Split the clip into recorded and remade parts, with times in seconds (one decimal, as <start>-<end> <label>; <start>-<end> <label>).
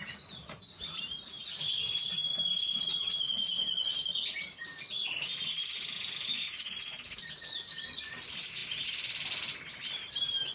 0.0-2.3 remade; 2.3-7.3 recorded; 7.3-10.5 remade